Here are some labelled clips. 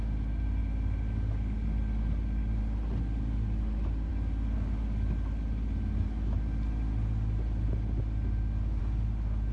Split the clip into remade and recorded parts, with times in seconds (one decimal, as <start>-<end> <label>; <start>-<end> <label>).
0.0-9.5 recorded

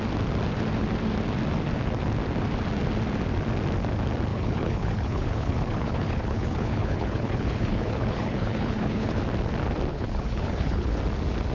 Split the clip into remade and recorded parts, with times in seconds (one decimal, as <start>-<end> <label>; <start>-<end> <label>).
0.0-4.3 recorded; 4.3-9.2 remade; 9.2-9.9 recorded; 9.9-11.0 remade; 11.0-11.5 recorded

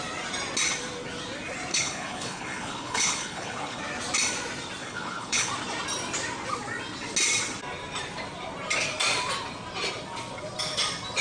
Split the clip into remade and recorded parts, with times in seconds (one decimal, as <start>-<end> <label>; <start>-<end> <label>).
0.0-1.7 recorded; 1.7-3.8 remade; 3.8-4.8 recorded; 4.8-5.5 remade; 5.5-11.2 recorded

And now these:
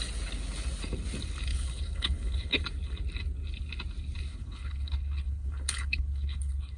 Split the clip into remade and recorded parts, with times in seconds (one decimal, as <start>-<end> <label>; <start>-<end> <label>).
0.0-1.5 recorded; 1.5-2.6 remade; 2.6-4.3 recorded; 4.3-6.8 remade